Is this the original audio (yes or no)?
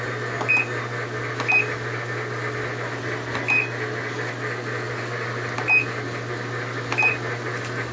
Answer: yes